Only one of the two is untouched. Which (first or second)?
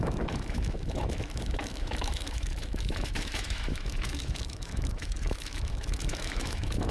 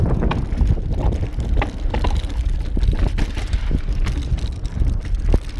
second